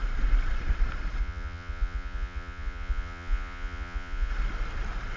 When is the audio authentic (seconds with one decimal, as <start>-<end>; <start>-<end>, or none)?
0.0-1.2; 4.3-5.2